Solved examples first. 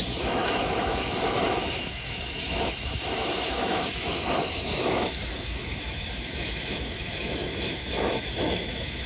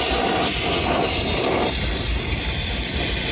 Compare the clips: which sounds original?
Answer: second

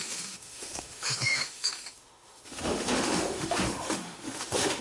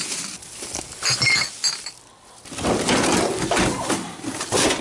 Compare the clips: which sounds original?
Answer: second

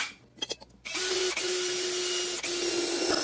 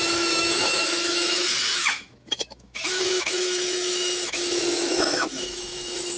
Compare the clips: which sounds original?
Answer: first